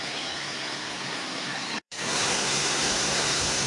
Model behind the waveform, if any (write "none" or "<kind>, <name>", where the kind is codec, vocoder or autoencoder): codec, SNAC